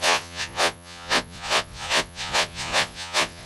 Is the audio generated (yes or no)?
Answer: yes